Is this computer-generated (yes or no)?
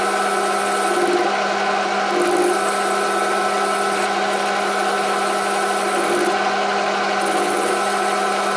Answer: no